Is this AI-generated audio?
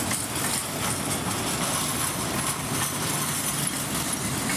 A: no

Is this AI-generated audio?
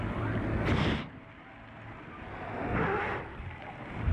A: no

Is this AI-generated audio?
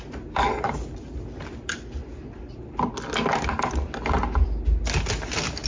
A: no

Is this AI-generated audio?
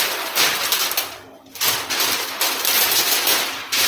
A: yes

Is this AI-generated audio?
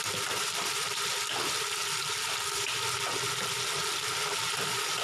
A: yes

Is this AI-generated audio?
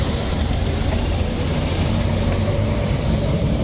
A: yes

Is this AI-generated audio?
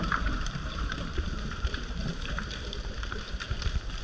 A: yes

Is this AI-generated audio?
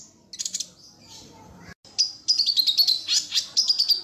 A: no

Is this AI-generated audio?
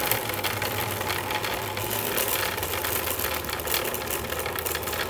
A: no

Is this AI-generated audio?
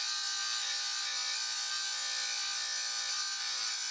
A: no